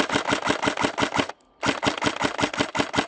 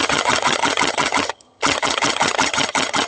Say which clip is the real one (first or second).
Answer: first